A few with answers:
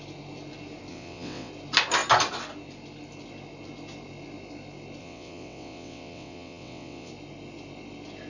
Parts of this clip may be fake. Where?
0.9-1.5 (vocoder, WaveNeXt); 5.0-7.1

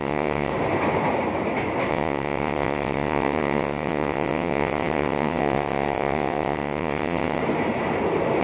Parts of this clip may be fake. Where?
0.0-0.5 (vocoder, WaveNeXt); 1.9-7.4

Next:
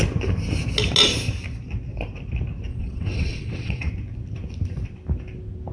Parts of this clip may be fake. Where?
2.7-3.9 (vocoder, WaveNeXt)

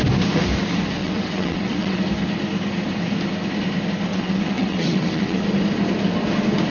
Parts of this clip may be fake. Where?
1.0-2.0 (vocoder, WaveNeXt); 4.1-5.4

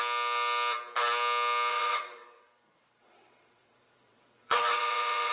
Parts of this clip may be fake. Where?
1.7-2.5 (vocoder, WaveNeXt); 3.0-5.3

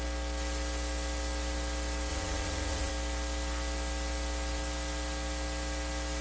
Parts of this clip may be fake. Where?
2.1-2.9 (vocoder, WaveNeXt)